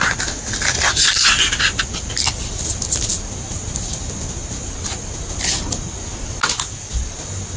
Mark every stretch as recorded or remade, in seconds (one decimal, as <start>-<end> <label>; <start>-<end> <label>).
0.0-7.6 recorded